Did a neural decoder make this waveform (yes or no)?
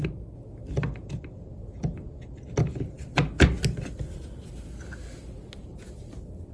no